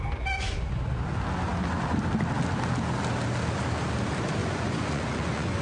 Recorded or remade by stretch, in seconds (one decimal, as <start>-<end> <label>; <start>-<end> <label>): 0.0-4.4 recorded; 4.4-5.6 remade